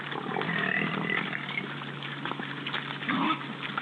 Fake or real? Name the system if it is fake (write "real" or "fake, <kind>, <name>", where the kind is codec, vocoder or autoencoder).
real